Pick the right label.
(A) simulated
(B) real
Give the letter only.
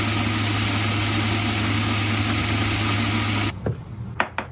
B